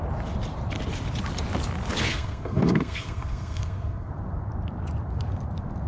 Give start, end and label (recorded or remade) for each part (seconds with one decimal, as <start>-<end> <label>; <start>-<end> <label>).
0.0-2.1 recorded; 2.1-4.1 remade; 4.1-5.9 recorded